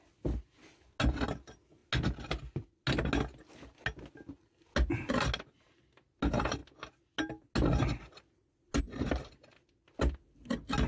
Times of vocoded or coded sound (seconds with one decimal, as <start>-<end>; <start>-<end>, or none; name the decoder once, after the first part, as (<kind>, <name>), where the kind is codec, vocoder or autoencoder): none